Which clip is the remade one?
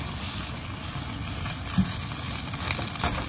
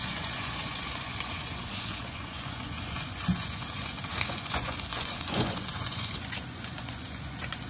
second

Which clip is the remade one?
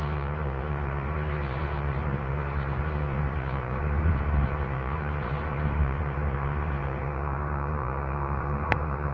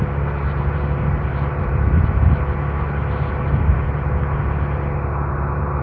first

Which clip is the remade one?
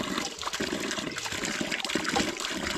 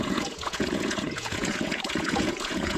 second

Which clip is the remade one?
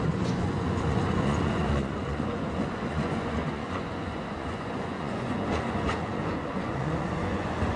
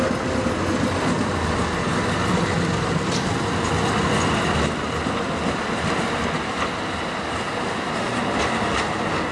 first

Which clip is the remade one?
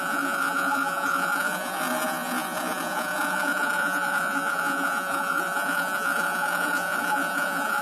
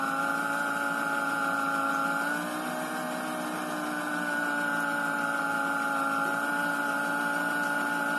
first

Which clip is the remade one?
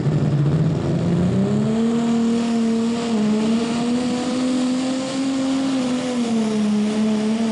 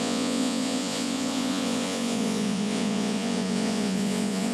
second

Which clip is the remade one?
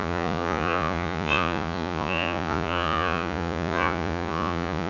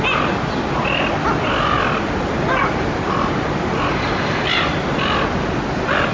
first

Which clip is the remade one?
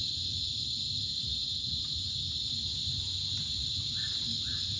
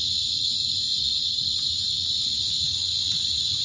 second